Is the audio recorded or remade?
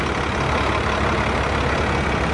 recorded